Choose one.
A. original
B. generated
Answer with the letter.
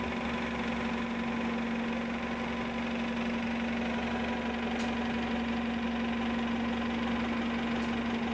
A